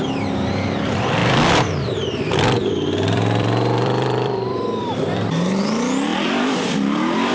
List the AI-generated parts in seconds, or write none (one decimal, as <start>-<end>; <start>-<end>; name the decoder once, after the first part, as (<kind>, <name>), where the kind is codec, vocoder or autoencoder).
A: 1.2-5.6 (vocoder, BigVGAN v2); 6.1-6.7